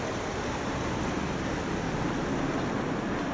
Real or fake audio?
real